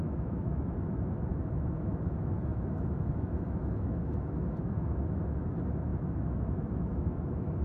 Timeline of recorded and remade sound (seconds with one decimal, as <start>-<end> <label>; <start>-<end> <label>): 0.0-7.6 remade